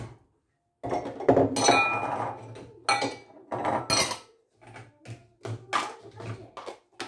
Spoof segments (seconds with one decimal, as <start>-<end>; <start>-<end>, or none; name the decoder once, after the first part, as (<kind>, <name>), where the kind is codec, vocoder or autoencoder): none